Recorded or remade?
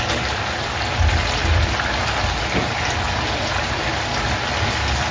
recorded